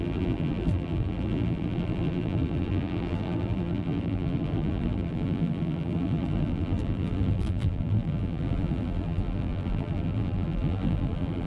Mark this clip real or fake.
fake